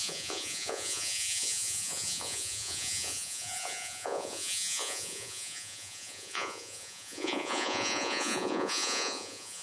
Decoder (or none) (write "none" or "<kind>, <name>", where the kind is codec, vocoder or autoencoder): vocoder, Vocos